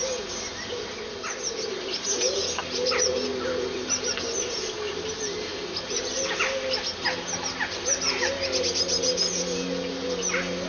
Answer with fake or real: real